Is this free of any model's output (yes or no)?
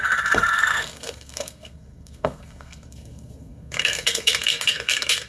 no